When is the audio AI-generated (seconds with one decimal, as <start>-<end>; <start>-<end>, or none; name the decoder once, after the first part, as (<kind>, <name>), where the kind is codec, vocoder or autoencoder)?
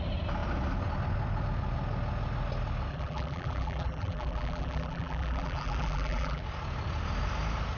2.9-6.4 (vocoder, BigVGAN v2)